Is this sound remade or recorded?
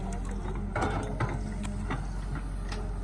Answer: recorded